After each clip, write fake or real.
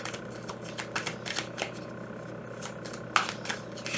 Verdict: real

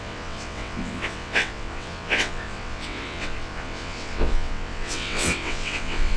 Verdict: fake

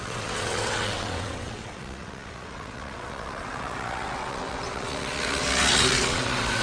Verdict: fake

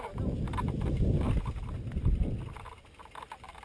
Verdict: real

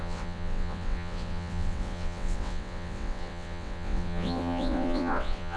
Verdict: fake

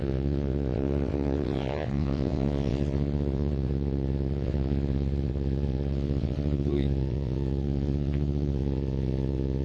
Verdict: fake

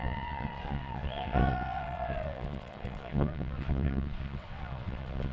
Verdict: fake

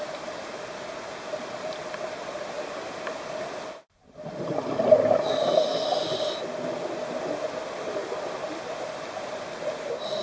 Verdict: real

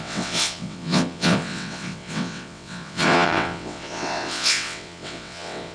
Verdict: fake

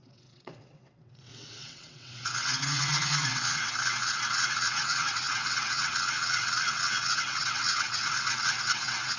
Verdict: fake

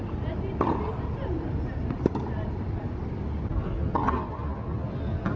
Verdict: real